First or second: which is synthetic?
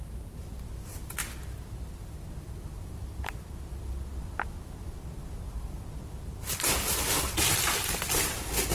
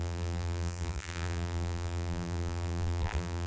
second